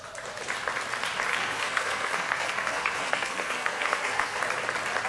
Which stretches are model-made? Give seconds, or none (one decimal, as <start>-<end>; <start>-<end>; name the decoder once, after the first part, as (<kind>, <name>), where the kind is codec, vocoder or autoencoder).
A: 1.3-4.4 (codec, SNAC)